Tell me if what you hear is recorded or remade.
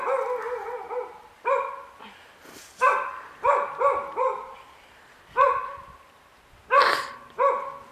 recorded